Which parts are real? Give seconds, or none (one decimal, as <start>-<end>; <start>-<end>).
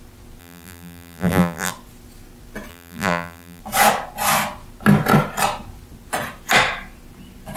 0.0-0.4; 1.7-2.7; 3.6-7.6